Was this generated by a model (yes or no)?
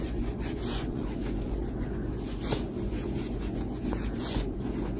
yes